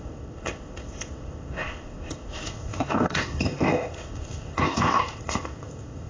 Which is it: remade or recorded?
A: remade